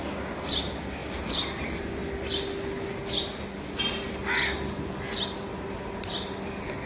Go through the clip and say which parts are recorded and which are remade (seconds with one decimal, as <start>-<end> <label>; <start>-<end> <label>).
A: 0.0-6.9 recorded